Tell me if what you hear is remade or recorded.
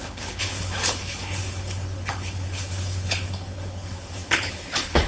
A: remade